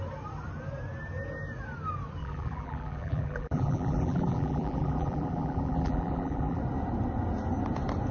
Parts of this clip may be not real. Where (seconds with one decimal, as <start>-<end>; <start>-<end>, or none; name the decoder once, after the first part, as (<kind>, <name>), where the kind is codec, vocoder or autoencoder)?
2.2-6.6 (vocoder, BigVGAN v2)